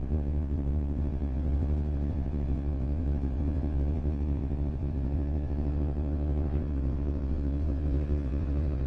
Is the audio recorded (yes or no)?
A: no